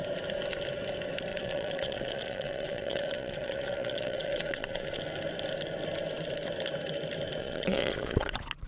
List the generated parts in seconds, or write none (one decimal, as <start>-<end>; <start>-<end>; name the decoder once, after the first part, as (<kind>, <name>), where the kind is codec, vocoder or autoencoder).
1.3-5.0 (vocoder, Vocos); 7.4-8.7